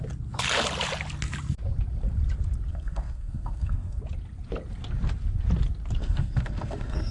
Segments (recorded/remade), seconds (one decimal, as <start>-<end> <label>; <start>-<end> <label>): 0.0-2.7 recorded; 2.7-4.0 remade; 4.0-6.0 recorded; 6.0-7.1 remade